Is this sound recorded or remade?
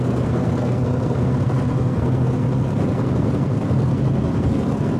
remade